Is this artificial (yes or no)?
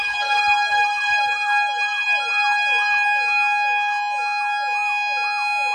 no